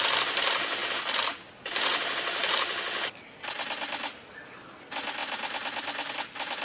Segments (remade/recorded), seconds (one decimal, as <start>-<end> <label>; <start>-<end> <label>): 0.0-6.6 recorded